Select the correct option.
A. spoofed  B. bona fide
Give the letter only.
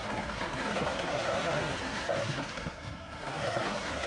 A